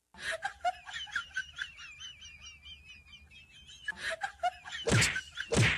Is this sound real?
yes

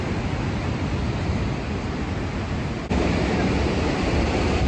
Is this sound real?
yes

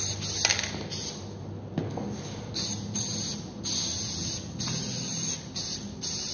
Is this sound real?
yes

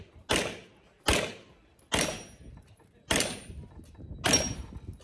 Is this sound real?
yes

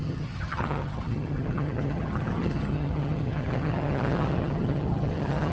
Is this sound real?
no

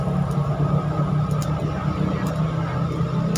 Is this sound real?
yes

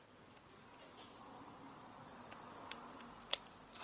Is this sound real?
yes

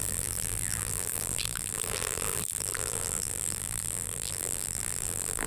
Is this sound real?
no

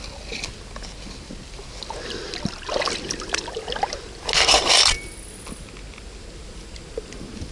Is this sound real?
yes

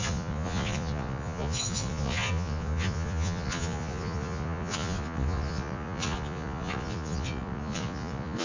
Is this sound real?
no